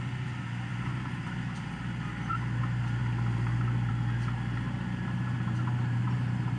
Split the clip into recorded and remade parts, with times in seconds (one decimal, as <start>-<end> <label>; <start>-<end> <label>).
0.0-6.6 recorded